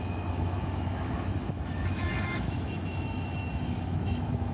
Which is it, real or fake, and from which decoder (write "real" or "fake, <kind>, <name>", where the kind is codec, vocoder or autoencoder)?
fake, autoencoder, DAC-VAE